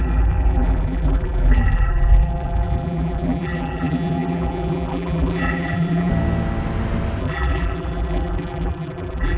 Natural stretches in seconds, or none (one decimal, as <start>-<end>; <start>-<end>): 6.1-7.2